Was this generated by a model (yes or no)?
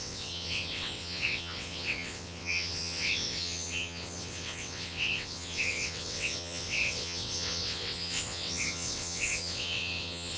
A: yes